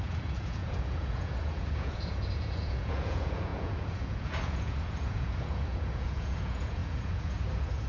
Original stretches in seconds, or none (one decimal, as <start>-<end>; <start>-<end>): none